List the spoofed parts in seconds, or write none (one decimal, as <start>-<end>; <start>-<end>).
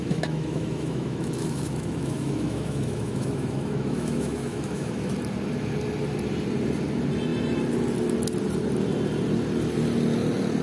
0.0-5.1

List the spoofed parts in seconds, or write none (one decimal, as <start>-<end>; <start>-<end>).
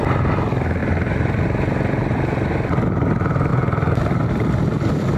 0.8-1.4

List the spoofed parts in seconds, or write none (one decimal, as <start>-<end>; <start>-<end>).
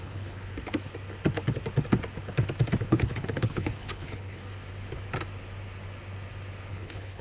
0.0-0.5; 2.9-4.4; 6.7-7.2